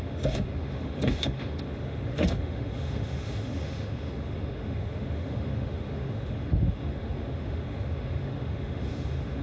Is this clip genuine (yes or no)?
no